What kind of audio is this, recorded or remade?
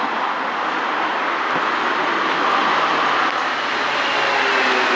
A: recorded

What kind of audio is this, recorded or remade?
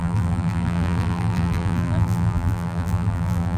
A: remade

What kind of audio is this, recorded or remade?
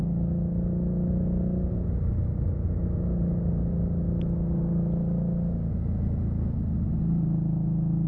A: recorded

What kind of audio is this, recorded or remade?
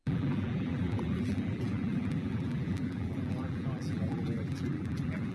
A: remade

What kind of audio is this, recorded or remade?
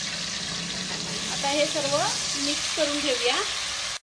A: recorded